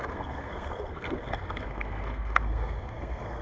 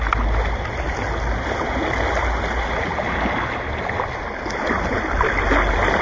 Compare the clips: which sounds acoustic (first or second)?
second